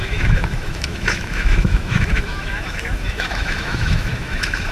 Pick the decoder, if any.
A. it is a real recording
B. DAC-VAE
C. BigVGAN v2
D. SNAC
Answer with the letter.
B